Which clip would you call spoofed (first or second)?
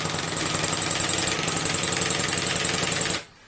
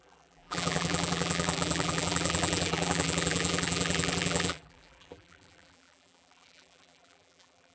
second